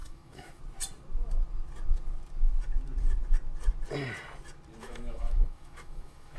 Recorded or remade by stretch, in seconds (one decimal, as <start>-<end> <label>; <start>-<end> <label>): 0.0-0.6 remade; 0.6-4.8 recorded; 4.8-6.4 remade